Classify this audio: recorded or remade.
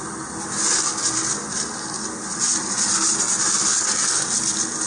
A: recorded